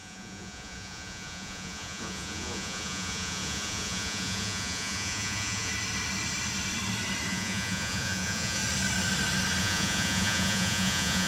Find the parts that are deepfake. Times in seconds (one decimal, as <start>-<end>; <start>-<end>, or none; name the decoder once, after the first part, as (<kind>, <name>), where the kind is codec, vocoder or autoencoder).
0.0-5.7 (vocoder, Vocos); 7.3-8.6; 9.6-11.3